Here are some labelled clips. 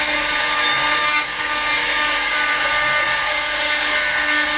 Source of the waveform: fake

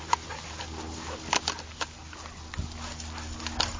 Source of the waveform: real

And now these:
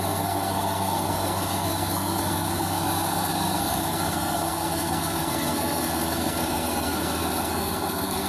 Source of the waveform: fake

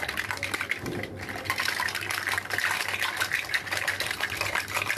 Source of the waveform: real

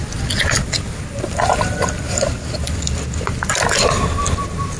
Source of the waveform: real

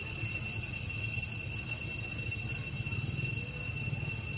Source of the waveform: real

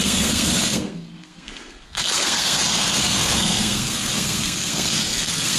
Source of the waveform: fake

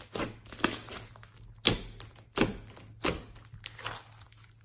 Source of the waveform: real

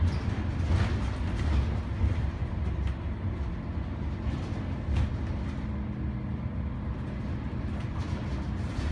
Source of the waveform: real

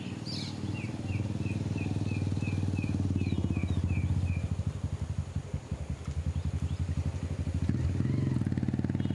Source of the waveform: real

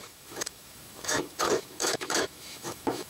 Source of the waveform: fake